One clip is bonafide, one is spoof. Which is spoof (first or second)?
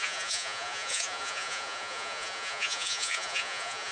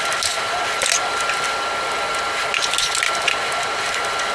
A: first